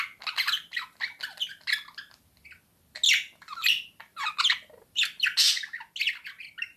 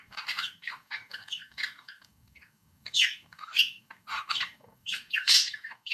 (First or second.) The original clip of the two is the first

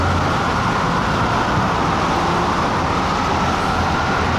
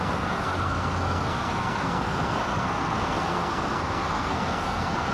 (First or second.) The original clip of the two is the first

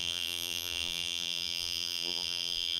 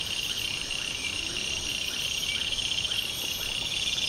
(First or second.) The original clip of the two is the second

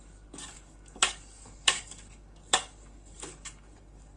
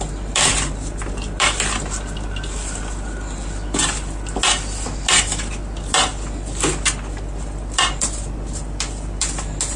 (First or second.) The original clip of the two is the second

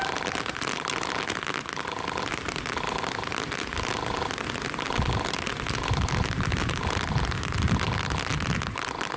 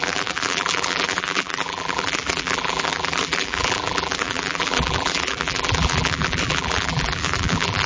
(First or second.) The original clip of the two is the first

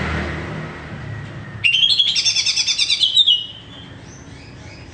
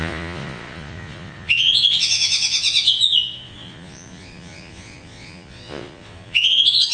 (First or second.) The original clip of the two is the first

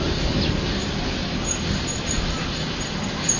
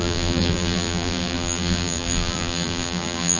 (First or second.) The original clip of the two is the first